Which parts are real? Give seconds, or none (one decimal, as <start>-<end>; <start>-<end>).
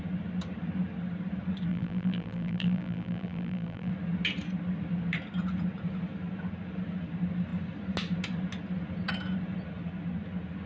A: 0.0-1.7; 3.9-10.7